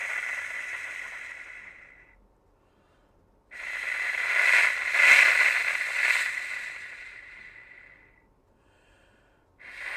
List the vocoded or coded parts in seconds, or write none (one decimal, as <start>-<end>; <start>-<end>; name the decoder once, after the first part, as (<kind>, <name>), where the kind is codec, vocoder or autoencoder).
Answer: none

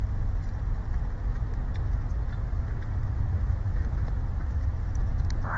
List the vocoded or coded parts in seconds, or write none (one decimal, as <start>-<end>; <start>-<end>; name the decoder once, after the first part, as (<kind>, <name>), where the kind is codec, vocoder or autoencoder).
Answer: 2.0-3.8 (vocoder, BigVGAN v2); 4.2-5.1

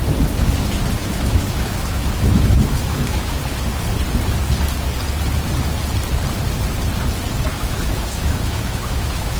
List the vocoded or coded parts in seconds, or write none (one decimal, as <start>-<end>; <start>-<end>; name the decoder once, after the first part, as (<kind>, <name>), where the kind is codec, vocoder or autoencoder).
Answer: 1.0-3.4 (autoencoder, DAC-VAE); 7.5-9.4

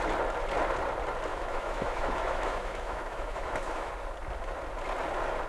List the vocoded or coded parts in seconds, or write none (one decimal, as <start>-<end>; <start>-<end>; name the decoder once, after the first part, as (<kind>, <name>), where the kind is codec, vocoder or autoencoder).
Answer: 1.3-3.9 (autoencoder, DAC-VAE)

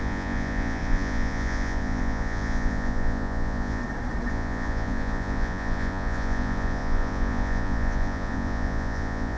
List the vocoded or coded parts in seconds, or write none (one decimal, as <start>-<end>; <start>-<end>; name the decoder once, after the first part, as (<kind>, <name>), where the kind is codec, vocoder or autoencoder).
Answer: 0.0-3.8 (vocoder, Vocos); 4.3-9.4